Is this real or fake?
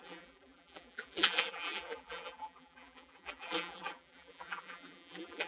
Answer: fake